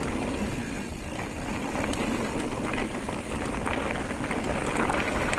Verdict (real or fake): real